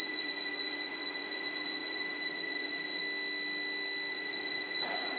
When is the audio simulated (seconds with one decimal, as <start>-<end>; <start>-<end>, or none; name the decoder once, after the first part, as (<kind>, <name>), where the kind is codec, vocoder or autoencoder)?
0.0-3.0 (vocoder, Vocos); 4.1-5.2